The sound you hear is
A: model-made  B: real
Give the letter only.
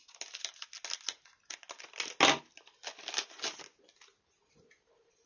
B